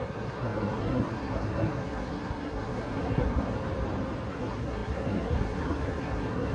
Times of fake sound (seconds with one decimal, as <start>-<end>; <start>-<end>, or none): 0.0-3.6; 4.3-6.5